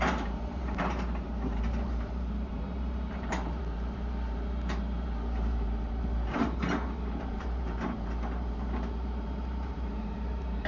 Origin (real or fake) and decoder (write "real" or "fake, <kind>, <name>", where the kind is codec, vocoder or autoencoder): fake, vocoder, BigVGAN v2